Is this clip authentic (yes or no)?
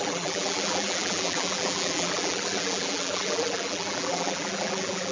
no